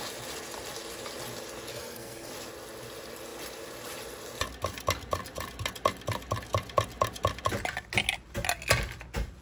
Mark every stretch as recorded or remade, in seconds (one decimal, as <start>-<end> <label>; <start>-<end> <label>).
0.0-1.7 recorded; 1.7-2.3 remade; 2.3-9.4 recorded